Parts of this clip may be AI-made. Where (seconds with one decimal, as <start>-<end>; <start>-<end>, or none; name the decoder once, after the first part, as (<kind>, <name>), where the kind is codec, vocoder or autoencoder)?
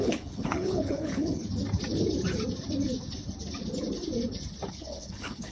0.0-1.4 (codec, HILCodec); 4.7-5.5